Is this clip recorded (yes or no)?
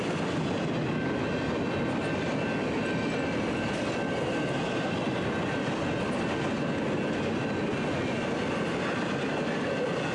yes